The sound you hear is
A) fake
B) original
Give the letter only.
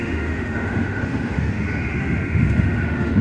A